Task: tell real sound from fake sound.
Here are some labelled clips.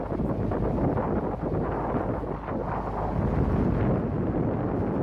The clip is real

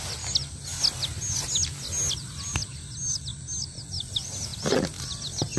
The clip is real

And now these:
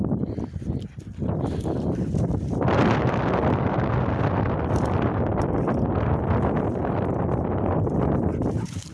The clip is real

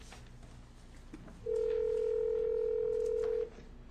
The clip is real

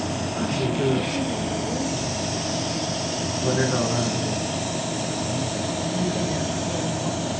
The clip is real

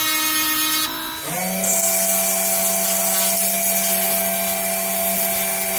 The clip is real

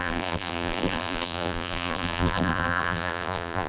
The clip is fake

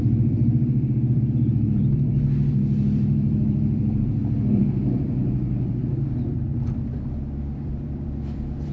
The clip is fake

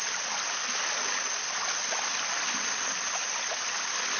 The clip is real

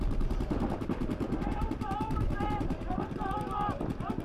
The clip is fake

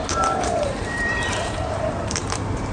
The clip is fake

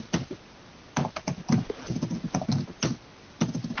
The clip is real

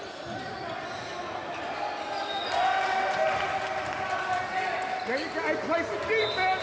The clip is real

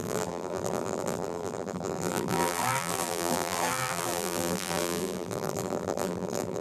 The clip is fake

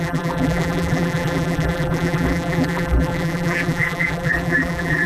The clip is fake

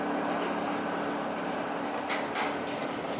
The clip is real